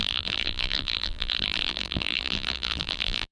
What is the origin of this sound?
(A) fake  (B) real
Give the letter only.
A